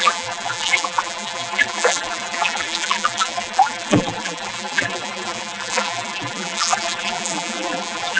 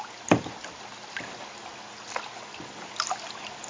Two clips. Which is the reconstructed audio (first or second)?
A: first